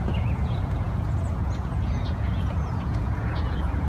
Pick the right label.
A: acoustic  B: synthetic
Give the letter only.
B